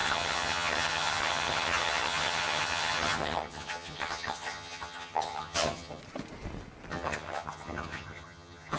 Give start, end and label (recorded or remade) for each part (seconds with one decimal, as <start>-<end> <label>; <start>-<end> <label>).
0.0-6.0 remade; 6.0-6.9 recorded; 6.9-8.8 remade

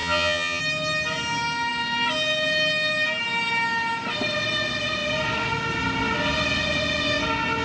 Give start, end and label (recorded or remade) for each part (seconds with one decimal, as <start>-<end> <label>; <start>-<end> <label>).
0.0-0.6 remade; 0.6-7.6 recorded

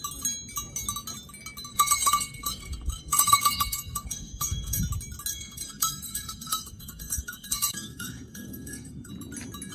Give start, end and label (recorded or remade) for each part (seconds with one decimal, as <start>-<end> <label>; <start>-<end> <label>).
0.0-1.7 recorded; 1.7-4.8 remade; 4.8-5.3 recorded; 5.3-9.1 remade; 9.1-9.7 recorded

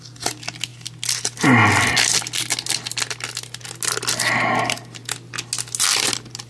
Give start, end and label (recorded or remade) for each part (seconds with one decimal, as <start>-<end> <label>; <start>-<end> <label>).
0.0-0.7 remade; 0.7-4.6 recorded; 4.6-5.0 remade; 5.0-5.9 recorded; 5.9-6.5 remade